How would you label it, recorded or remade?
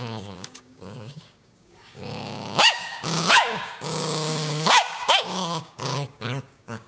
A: remade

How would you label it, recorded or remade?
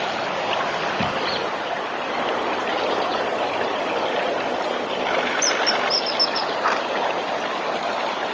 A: recorded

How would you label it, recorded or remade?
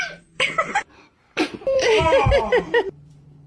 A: remade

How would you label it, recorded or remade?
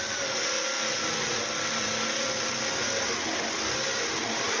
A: recorded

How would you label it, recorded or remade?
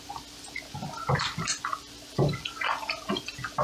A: recorded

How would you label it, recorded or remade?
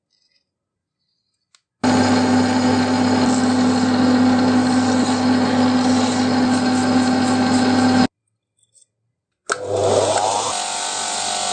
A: recorded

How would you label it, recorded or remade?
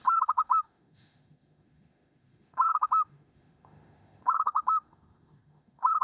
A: remade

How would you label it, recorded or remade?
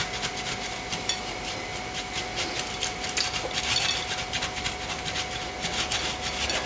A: recorded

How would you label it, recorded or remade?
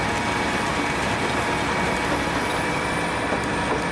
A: recorded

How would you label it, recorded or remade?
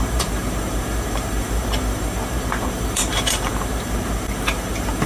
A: remade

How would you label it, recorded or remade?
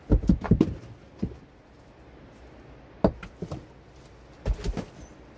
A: recorded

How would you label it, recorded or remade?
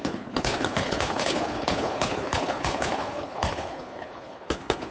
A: remade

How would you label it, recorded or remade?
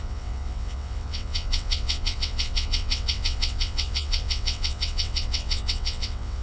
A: remade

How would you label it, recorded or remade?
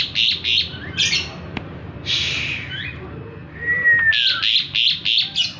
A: recorded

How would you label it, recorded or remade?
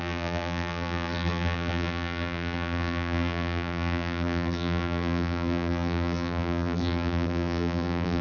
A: remade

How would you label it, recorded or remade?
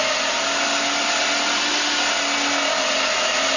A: recorded